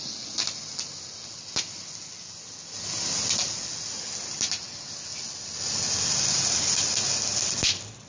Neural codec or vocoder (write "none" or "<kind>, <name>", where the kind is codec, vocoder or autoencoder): none